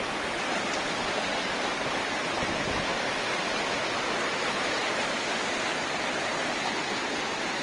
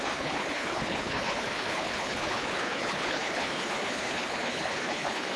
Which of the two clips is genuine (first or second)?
first